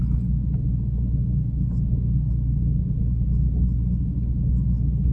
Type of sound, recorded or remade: recorded